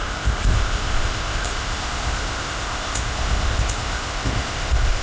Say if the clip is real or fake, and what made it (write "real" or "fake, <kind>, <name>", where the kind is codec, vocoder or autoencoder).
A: fake, codec, ZipCodec